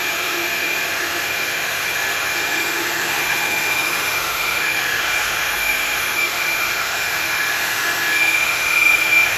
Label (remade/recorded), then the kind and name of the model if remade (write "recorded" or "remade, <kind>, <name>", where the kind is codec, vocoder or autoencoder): remade, autoencoder, DAC-VAE